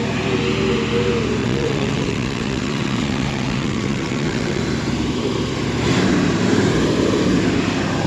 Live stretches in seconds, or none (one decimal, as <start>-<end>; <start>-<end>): 0.0-1.4; 4.6-8.1